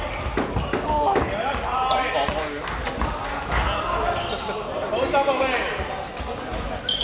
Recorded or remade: recorded